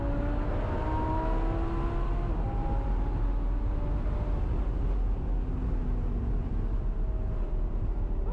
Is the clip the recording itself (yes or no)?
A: yes